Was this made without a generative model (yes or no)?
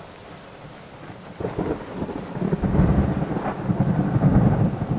yes